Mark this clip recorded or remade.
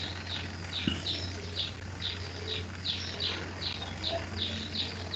recorded